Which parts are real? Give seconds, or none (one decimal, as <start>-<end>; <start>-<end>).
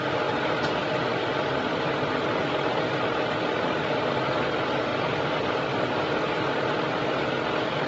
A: 0.0-1.1; 1.7-7.9